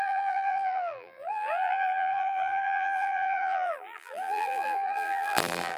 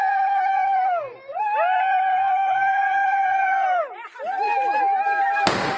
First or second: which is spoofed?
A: first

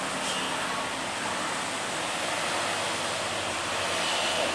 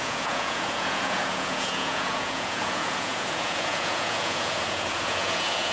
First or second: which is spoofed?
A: second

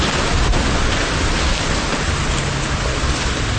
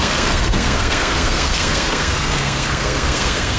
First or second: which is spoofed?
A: second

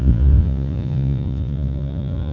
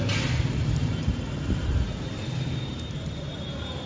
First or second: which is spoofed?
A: first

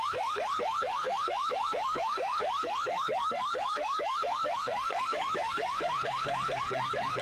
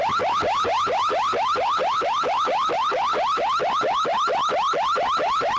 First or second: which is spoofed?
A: first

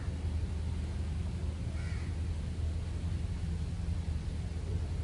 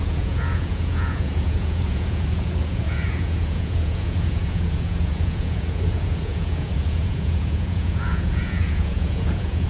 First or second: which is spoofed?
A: second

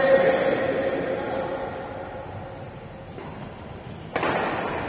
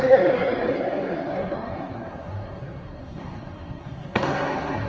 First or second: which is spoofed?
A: second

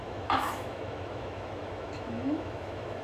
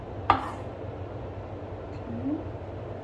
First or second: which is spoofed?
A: first